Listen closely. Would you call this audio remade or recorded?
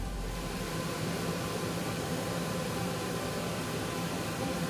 remade